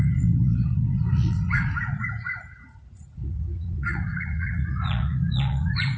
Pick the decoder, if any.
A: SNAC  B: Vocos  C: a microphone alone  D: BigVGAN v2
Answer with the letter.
B